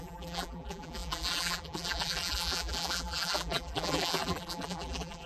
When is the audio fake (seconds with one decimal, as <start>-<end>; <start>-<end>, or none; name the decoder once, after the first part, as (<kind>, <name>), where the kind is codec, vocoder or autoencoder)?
0.0-5.3 (vocoder, BigVGAN v2)